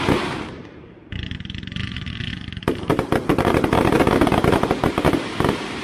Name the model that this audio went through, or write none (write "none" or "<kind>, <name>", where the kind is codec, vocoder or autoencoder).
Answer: vocoder, BigVGAN v2